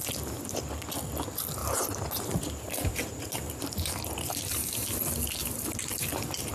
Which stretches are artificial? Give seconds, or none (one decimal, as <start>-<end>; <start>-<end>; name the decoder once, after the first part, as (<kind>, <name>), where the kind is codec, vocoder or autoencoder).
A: 2.9-4.0 (vocoder, BigVGAN v2); 5.4-6.5